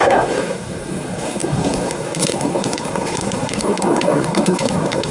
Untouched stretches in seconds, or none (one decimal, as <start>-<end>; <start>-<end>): none